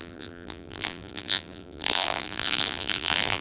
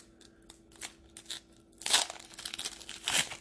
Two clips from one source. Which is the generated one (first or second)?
first